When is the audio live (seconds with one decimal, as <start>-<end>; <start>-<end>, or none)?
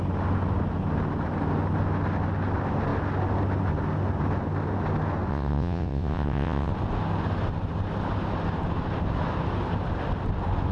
0.0-5.3; 6.7-10.7